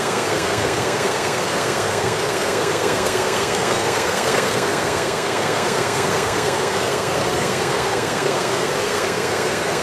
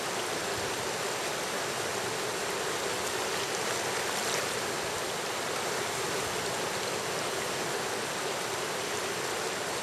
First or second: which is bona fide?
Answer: second